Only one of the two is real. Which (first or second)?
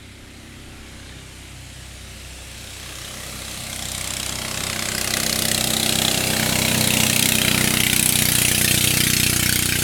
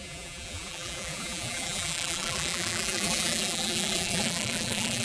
first